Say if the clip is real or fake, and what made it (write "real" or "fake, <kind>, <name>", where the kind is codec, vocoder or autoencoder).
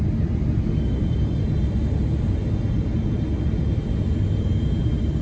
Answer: real